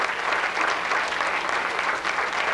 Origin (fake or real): real